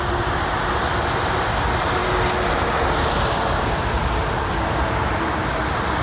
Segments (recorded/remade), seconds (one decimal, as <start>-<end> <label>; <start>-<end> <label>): 0.0-6.0 recorded